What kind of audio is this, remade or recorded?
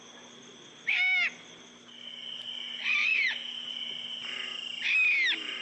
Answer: recorded